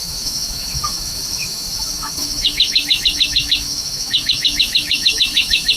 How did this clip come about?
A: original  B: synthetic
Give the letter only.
B